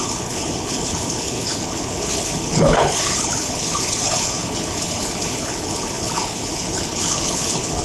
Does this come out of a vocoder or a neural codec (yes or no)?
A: yes